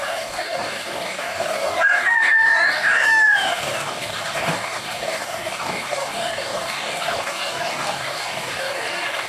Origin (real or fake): fake